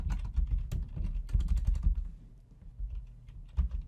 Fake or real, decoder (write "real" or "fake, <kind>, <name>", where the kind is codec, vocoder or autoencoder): real